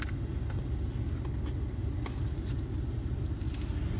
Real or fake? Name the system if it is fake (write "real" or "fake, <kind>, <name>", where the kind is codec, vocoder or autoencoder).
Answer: real